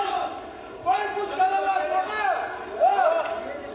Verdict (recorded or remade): recorded